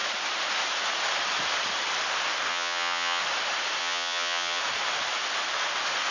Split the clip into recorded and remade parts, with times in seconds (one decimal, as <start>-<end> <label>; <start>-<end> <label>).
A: 0.0-2.5 recorded; 2.5-3.2 remade; 3.2-3.8 recorded; 3.8-4.6 remade; 4.6-6.1 recorded